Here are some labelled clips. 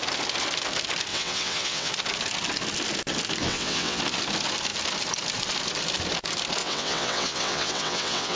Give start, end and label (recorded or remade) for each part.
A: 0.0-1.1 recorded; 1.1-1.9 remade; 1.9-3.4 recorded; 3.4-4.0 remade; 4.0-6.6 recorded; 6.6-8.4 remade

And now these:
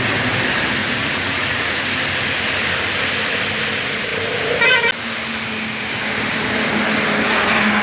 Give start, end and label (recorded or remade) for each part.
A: 0.0-0.8 recorded; 0.8-1.7 remade; 1.7-7.8 recorded

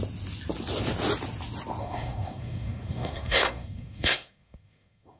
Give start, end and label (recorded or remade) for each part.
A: 0.0-1.8 recorded; 1.8-5.2 remade

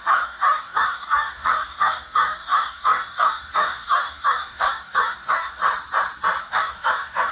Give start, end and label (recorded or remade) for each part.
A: 0.0-5.6 remade; 5.6-6.4 recorded; 6.4-7.3 remade

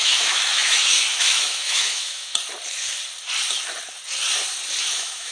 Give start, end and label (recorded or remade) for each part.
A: 0.0-2.3 remade; 2.3-4.8 recorded; 4.8-5.3 remade

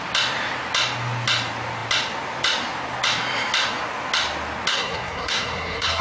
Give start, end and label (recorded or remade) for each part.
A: 0.0-4.7 recorded; 4.7-6.0 remade

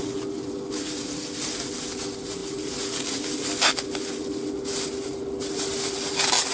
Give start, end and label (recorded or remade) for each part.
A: 0.0-6.5 recorded